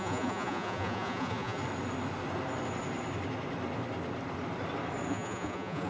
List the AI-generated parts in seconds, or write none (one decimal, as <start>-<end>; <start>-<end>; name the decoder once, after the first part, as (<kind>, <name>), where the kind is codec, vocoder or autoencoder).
0.0-1.6 (vocoder, Vocos); 5.1-5.9